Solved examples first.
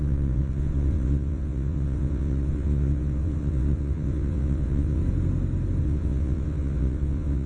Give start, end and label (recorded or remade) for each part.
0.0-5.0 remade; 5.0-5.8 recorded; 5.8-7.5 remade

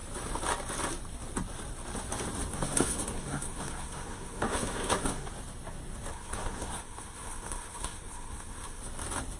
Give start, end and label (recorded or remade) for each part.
0.0-2.5 recorded; 2.5-5.3 remade; 5.3-6.1 recorded; 6.1-8.8 remade; 8.8-9.4 recorded

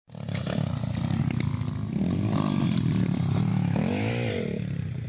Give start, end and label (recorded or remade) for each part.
0.0-3.5 recorded; 3.5-4.1 remade; 4.1-5.1 recorded

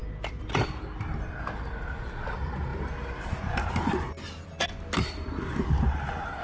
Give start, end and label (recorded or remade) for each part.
0.0-6.4 recorded

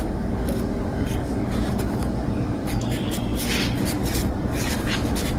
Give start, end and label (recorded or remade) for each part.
0.0-5.4 remade

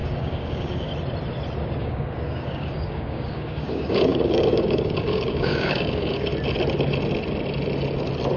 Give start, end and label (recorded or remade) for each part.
0.0-0.9 remade; 0.9-1.8 recorded; 1.8-6.3 remade; 6.3-8.4 recorded

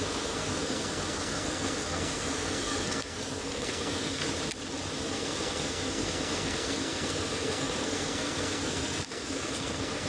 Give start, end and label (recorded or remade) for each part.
0.0-4.2 remade; 4.2-5.0 recorded; 5.0-10.1 remade

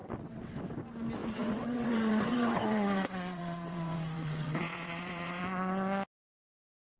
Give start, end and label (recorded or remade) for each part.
0.0-0.6 remade; 0.6-1.2 recorded; 1.2-5.4 remade; 5.4-7.0 recorded